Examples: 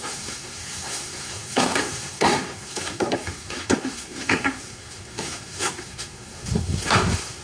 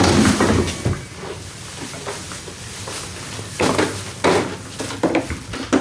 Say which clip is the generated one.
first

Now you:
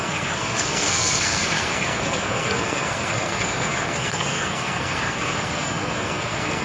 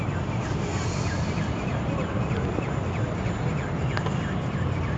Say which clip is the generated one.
first